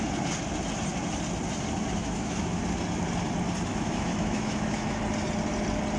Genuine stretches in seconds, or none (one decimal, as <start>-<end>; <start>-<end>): 0.0-2.0; 2.6-3.7; 5.0-6.0